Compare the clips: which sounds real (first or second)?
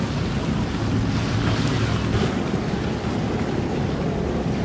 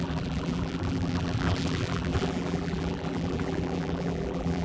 first